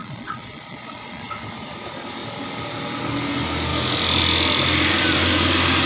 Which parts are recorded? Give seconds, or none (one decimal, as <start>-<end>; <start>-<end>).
1.3-5.9